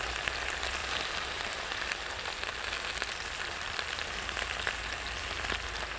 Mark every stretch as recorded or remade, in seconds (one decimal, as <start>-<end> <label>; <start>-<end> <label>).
0.0-0.8 recorded; 0.8-4.4 remade; 4.4-6.0 recorded